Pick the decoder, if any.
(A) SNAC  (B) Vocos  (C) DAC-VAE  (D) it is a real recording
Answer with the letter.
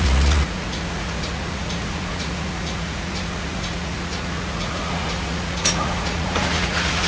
B